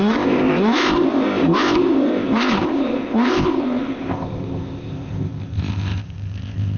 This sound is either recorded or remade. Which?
remade